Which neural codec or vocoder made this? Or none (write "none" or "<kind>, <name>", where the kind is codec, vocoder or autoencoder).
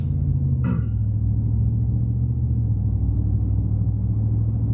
none